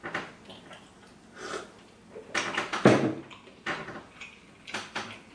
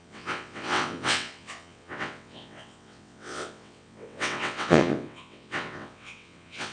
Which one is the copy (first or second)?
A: second